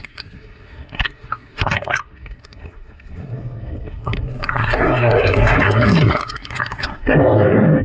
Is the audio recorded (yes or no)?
no